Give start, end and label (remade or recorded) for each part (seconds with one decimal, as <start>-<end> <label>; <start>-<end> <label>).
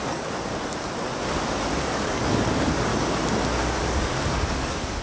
0.0-0.5 remade; 0.5-1.8 recorded; 1.8-2.9 remade; 2.9-3.8 recorded; 3.8-5.0 remade